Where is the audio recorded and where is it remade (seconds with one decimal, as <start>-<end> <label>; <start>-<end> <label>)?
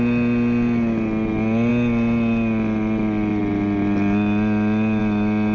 0.0-5.5 recorded